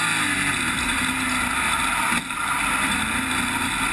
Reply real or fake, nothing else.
real